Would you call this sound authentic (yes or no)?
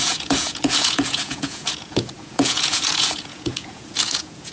no